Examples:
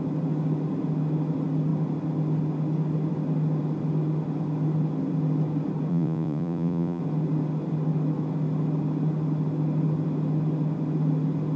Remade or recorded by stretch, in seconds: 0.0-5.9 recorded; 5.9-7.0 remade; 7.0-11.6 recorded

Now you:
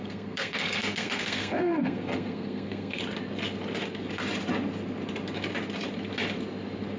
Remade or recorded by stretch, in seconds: 0.0-3.0 remade; 3.0-7.0 recorded

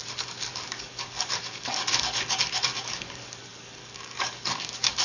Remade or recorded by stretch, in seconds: 0.0-5.0 remade

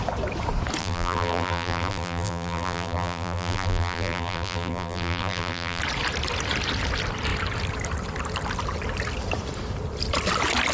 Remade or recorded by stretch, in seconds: 0.0-0.8 recorded; 0.8-5.8 remade; 5.8-10.7 recorded

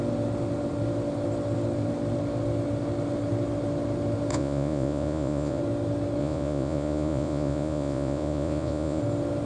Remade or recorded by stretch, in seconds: 0.0-4.3 recorded; 4.3-5.6 remade; 5.6-6.2 recorded; 6.2-9.0 remade; 9.0-9.5 recorded

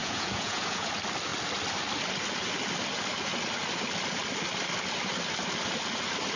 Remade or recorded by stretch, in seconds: 0.0-0.9 remade; 0.9-6.4 recorded

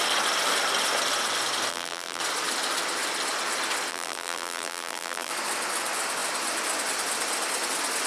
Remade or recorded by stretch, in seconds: 0.0-1.7 recorded; 1.7-2.2 remade; 2.2-3.9 recorded; 3.9-5.3 remade; 5.3-8.1 recorded

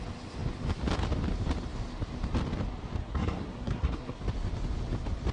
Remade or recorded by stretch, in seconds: 0.0-3.0 recorded; 3.0-4.2 remade; 4.2-5.3 recorded